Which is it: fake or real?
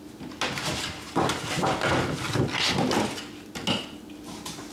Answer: real